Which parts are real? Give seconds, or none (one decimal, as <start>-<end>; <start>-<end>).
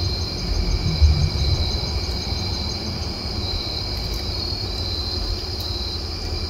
0.0-6.5